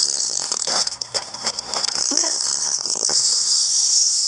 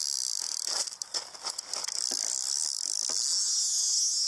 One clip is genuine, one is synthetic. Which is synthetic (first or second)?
first